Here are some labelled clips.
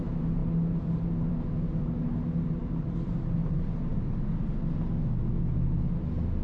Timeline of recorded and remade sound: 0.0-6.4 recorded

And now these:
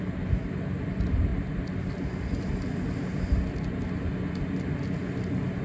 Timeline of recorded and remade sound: 0.0-5.6 recorded

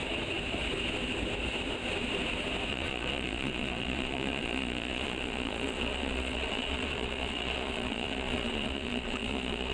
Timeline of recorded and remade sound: 0.0-2.7 recorded; 2.7-9.7 remade